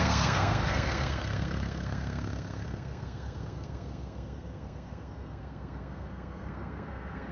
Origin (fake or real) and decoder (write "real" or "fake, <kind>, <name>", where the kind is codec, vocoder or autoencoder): fake, codec, SNAC